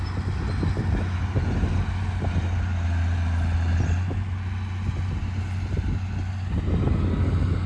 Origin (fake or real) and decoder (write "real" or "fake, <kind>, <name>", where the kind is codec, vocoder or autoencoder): real